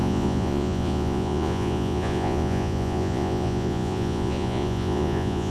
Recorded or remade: remade